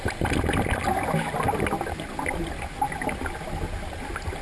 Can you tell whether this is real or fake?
real